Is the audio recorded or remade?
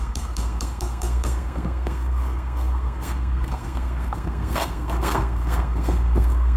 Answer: remade